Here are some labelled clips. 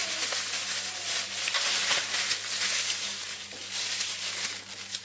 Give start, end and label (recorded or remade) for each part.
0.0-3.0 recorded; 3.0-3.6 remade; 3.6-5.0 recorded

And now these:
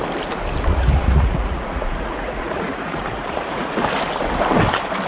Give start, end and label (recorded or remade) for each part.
0.0-0.7 recorded; 0.7-3.8 remade; 3.8-5.1 recorded

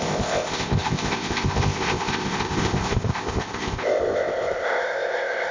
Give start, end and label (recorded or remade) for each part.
0.0-5.5 remade